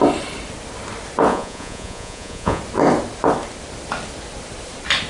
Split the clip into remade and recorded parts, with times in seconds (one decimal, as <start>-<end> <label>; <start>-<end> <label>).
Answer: 0.0-1.3 recorded; 1.3-2.6 remade; 2.6-5.1 recorded